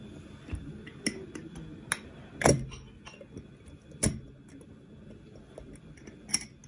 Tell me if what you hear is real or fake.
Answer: real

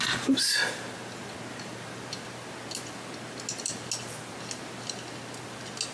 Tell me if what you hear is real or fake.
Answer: real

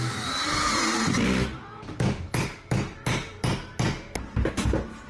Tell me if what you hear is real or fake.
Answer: real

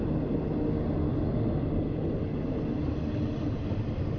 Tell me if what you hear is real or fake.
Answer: real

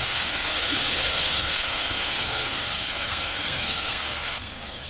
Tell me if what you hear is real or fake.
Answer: fake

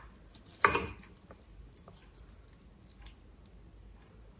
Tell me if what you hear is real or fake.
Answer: real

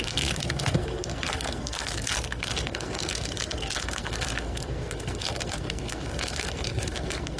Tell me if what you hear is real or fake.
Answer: fake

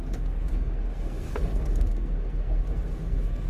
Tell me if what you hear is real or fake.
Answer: fake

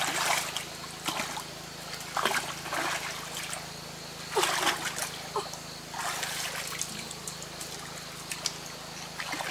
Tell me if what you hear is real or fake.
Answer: real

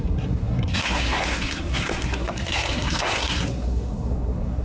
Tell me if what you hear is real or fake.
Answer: fake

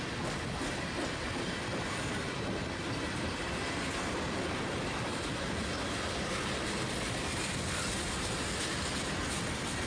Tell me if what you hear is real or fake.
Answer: real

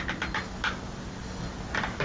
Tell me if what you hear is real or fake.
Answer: real